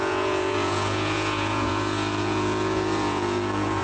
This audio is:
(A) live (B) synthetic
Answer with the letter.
B